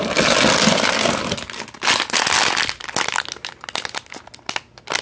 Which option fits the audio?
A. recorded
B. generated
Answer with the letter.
A